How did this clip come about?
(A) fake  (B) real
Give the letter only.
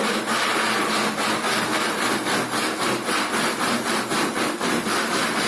B